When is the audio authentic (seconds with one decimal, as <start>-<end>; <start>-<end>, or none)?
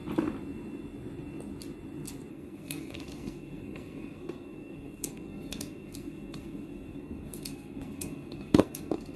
0.0-2.3